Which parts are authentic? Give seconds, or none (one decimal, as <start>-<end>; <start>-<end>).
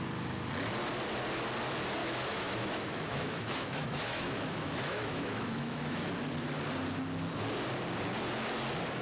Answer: 0.0-2.0; 6.1-9.0